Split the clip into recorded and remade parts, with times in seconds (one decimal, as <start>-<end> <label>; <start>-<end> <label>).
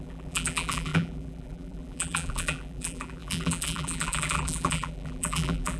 0.0-5.8 remade